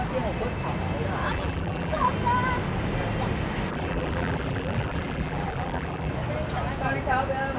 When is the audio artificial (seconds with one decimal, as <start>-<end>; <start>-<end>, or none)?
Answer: 1.3-2.1; 3.7-6.1